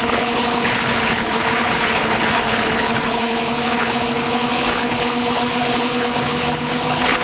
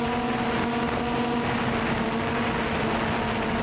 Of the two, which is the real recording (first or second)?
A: second